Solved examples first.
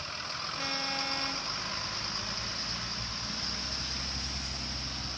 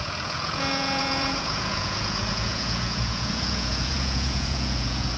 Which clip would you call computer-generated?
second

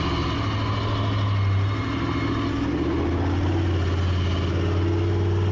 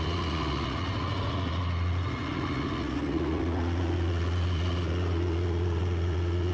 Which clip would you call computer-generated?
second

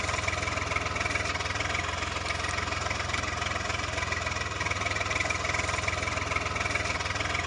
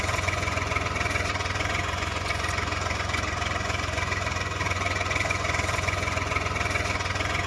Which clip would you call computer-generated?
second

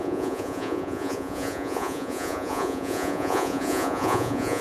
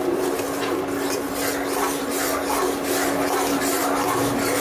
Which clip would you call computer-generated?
first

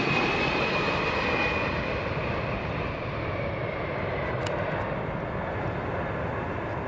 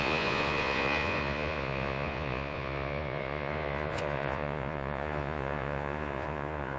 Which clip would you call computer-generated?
second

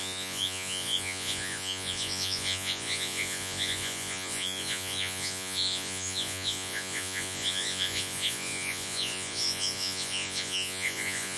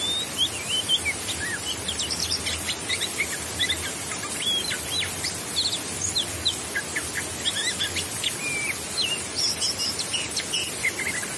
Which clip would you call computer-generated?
first